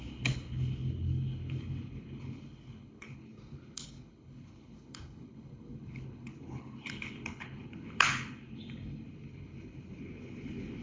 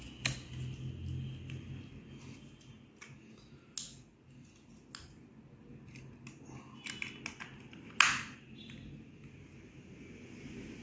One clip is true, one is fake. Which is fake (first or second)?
first